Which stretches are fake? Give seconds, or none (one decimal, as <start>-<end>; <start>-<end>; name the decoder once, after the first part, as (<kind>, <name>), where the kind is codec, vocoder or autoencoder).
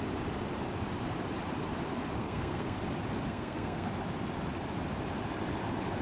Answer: 2.2-2.8 (codec, SNAC); 3.3-3.9